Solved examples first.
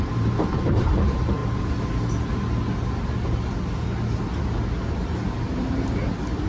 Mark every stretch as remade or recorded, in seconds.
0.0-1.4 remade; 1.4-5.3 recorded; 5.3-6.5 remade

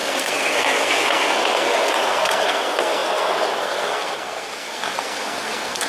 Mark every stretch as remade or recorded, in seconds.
0.0-5.9 remade

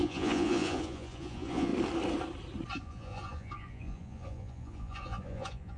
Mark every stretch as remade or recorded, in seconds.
0.0-1.7 remade; 1.7-2.8 recorded; 2.8-5.8 remade

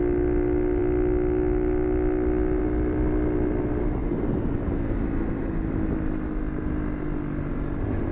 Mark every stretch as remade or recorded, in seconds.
0.0-8.1 recorded

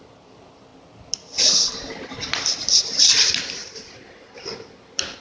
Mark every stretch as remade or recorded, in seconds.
0.0-0.7 remade; 0.7-2.0 recorded; 2.0-5.2 remade